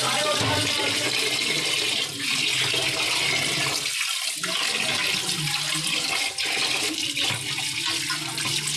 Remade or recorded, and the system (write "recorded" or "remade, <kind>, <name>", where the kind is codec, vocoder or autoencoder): recorded